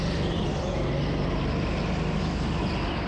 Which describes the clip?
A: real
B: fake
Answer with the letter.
A